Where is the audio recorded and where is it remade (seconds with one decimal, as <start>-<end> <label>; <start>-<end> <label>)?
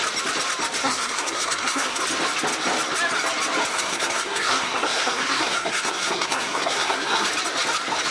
0.0-0.8 recorded; 0.8-2.0 remade; 2.0-3.7 recorded; 3.7-7.3 remade; 7.3-8.1 recorded